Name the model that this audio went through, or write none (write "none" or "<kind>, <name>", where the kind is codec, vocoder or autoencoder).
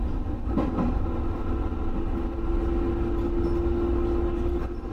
none